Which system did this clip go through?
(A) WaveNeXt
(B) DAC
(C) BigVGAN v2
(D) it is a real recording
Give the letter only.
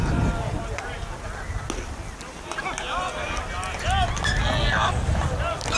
D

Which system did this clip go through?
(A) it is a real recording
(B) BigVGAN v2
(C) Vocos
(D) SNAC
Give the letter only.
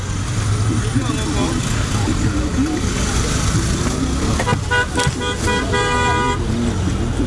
A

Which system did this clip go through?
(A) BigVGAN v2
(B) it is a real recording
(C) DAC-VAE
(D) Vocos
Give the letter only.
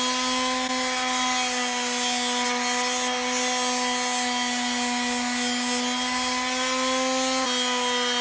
B